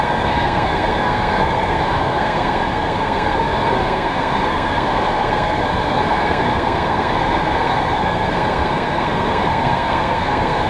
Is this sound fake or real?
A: fake